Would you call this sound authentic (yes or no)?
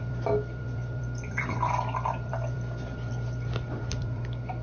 no